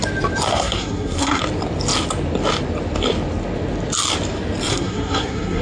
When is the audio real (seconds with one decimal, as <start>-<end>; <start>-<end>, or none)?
0.0-0.5; 1.4-4.7